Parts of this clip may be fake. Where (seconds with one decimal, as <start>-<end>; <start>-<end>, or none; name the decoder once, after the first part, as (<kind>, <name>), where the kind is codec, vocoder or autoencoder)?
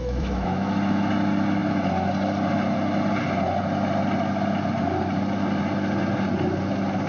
0.0-1.1 (autoencoder, DAC-VAE)